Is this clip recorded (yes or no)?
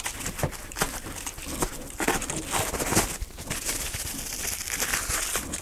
yes